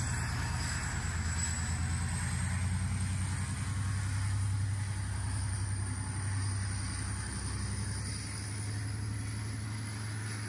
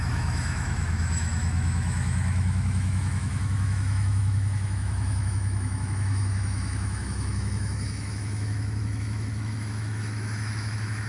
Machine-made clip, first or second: second